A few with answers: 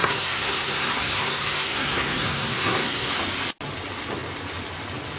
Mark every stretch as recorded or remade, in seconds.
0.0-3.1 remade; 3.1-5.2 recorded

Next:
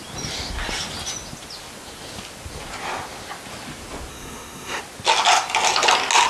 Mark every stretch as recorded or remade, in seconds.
0.0-4.1 recorded; 4.1-4.8 remade; 4.8-6.3 recorded

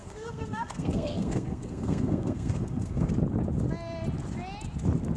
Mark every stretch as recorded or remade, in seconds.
0.0-3.1 remade; 3.1-5.2 recorded

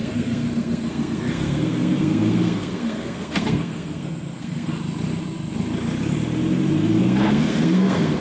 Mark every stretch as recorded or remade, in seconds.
0.0-4.7 remade; 4.7-7.0 recorded; 7.0-8.2 remade

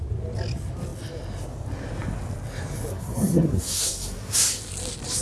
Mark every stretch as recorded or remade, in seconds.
0.0-2.9 recorded; 2.9-4.6 remade; 4.6-5.2 recorded